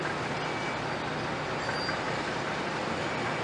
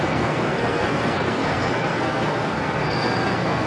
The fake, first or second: second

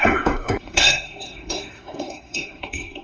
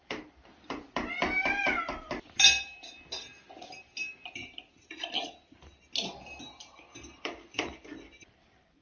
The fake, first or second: first